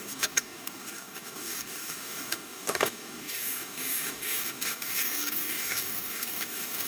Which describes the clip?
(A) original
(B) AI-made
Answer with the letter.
B